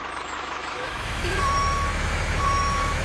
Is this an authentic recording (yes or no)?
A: no